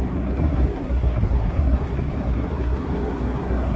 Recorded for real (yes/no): no